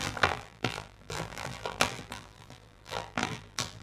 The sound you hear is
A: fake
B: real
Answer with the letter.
A